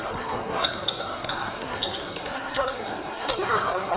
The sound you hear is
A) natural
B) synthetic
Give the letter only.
B